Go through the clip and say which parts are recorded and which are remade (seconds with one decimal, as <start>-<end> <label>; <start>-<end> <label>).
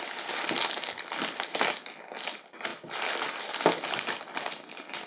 0.0-5.1 recorded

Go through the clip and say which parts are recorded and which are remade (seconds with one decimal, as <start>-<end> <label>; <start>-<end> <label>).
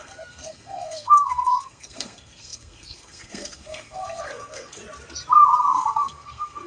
0.0-4.8 remade; 4.8-5.6 recorded; 5.6-6.7 remade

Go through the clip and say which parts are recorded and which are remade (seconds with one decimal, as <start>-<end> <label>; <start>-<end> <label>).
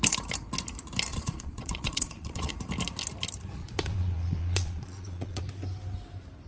0.0-1.1 recorded; 1.1-2.5 remade; 2.5-3.6 recorded; 3.6-5.4 remade; 5.4-6.5 recorded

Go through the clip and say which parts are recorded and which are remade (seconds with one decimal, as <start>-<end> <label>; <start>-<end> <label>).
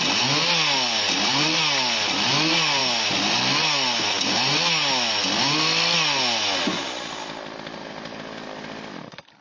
0.0-9.4 recorded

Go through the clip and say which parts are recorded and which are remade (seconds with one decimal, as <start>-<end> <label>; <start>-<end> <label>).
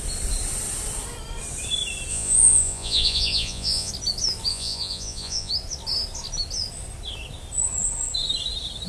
0.0-2.1 recorded; 2.1-3.9 remade; 3.9-4.5 recorded; 4.5-5.5 remade; 5.5-8.9 recorded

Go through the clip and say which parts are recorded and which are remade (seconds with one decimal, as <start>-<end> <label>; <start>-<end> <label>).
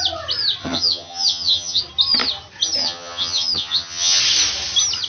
0.0-0.6 recorded; 0.6-1.8 remade; 1.8-2.8 recorded; 2.8-4.2 remade; 4.2-5.1 recorded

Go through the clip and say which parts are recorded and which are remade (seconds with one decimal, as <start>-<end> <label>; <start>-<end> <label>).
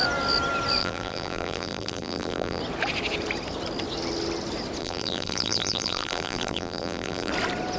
0.0-0.8 recorded; 0.8-2.6 remade; 2.6-4.8 recorded; 4.8-7.3 remade; 7.3-7.8 recorded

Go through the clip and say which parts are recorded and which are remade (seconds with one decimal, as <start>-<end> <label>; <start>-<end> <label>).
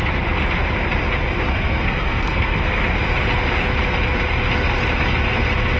0.0-1.5 recorded; 1.5-2.8 remade; 2.8-5.8 recorded